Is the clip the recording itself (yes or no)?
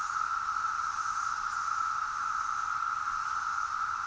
yes